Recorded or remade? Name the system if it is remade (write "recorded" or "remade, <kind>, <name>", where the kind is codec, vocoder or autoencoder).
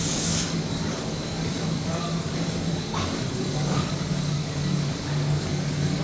remade, codec, DAC